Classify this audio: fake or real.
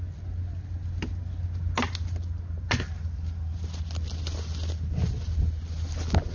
real